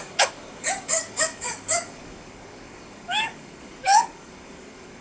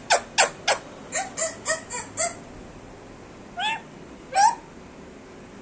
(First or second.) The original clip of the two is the second